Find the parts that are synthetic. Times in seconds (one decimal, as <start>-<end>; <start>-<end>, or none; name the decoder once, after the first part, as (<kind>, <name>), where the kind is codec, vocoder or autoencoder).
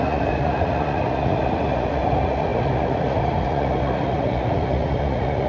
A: 0.0-5.5 (vocoder, Vocos)